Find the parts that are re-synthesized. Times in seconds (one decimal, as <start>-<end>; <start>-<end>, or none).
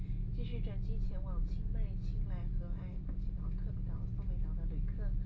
none